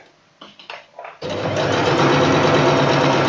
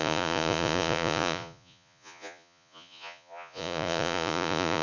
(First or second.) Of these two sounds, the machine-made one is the second